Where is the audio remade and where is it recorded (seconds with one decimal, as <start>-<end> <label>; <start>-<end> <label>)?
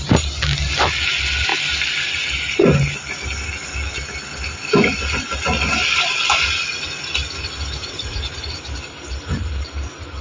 0.0-7.8 recorded; 7.8-8.5 remade; 8.5-10.2 recorded